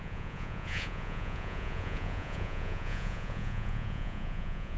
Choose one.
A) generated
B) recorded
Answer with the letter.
A